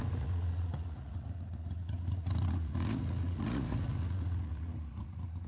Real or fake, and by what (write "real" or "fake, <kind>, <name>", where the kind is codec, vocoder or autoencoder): fake, vocoder, Vocos